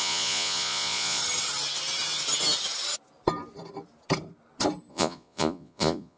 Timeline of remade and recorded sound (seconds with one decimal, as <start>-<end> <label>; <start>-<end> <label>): 0.0-1.2 remade; 1.2-4.9 recorded; 4.9-6.2 remade